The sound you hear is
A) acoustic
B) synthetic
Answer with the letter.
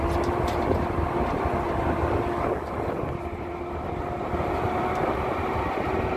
A